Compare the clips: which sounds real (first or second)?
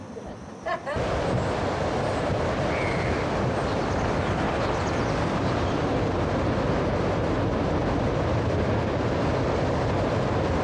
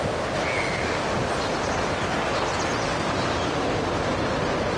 second